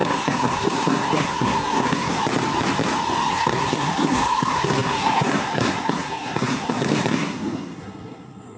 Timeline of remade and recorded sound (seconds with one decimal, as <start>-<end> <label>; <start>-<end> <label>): 0.0-2.2 remade; 2.2-3.3 recorded; 3.3-8.6 remade